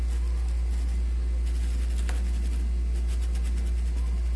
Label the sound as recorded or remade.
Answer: recorded